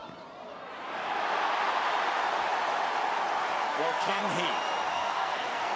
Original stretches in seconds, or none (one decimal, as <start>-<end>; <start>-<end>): 0.0-3.6; 4.2-4.9